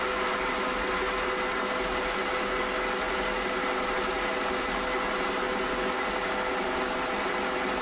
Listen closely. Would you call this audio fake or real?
real